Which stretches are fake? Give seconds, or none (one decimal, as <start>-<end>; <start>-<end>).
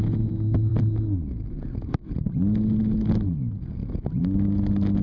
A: none